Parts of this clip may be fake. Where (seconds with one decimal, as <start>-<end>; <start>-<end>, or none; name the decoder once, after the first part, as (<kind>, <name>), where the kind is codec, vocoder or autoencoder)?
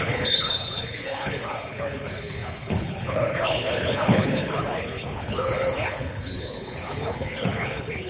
0.0-8.1 (codec, HILCodec)